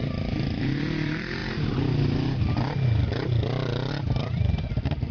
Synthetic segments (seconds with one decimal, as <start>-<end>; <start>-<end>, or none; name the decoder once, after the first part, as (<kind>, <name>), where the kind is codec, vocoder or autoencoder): 0.0-1.4 (vocoder, BigVGAN v2); 3.9-5.1